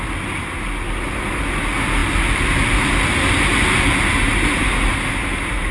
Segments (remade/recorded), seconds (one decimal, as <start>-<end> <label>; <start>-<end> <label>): 0.0-5.7 recorded